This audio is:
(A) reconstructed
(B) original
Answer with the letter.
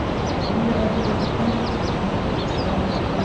B